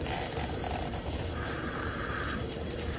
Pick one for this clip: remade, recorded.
remade